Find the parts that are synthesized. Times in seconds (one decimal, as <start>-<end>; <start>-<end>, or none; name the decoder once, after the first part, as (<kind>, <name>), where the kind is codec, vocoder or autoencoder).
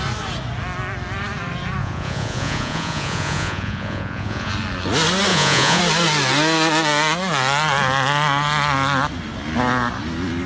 1.8-4.5 (vocoder, Vocos); 5.3-5.8